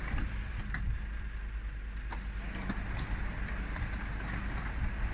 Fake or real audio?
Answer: real